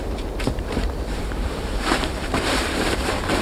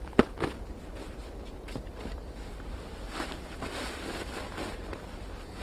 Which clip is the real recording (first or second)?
second